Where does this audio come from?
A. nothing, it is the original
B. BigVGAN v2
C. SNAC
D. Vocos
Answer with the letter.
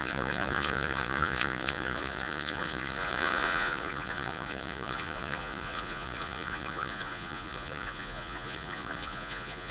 D